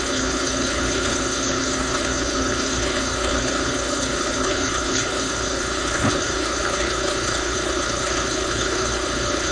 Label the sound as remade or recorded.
remade